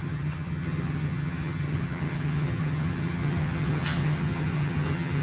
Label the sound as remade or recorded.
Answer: remade